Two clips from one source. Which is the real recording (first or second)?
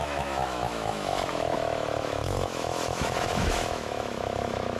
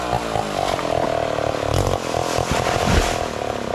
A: second